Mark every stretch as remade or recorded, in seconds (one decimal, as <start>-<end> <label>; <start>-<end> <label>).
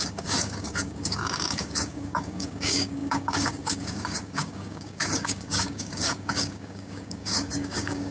0.0-8.1 remade